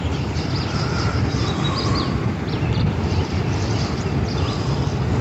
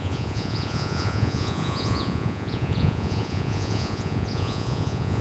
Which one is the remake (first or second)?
second